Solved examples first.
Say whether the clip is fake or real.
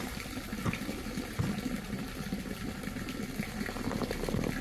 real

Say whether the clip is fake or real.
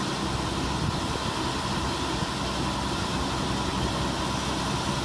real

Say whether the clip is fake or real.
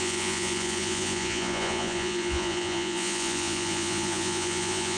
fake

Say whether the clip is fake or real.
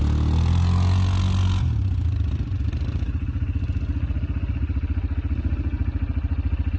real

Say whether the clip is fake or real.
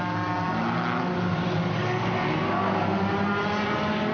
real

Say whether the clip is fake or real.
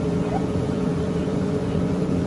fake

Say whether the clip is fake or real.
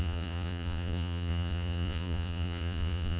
fake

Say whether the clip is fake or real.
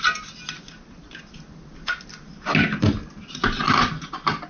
real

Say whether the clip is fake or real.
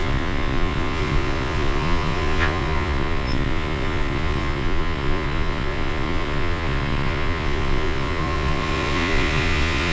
fake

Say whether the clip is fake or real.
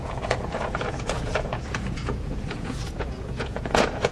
fake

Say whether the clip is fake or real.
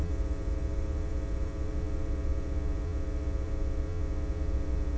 fake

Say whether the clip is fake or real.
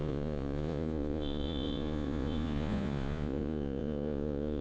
fake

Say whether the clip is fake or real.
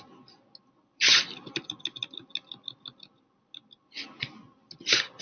real